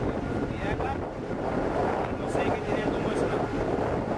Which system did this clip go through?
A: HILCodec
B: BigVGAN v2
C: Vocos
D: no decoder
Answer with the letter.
D